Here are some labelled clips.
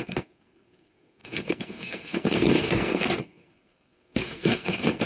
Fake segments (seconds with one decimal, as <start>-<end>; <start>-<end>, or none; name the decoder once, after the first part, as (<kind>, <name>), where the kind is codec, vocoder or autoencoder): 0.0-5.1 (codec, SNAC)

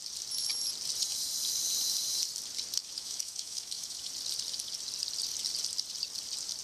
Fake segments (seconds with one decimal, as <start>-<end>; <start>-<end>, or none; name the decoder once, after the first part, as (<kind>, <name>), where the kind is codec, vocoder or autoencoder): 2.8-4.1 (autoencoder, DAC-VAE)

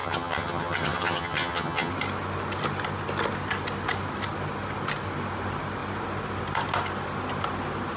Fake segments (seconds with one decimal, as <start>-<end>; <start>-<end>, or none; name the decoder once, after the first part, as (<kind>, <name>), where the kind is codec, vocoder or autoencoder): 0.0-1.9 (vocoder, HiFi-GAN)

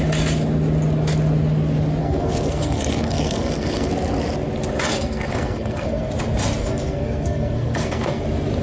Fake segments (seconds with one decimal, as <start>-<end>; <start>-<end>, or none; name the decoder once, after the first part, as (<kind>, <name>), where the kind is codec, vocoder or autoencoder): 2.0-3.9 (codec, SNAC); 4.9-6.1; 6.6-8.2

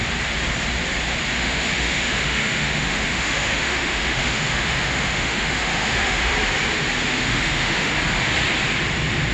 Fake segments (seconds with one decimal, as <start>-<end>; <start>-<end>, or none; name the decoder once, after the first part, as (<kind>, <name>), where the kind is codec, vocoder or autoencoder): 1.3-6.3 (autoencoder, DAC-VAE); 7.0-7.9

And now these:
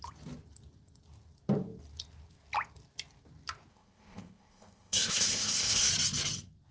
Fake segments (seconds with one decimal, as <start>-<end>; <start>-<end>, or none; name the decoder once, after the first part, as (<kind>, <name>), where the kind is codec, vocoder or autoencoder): 3.7-5.9 (codec, ZipCodec)

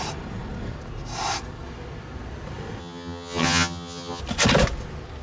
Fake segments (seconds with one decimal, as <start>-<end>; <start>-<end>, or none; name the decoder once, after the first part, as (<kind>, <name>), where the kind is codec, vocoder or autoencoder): 2.8-4.2 (vocoder, HiFi-GAN)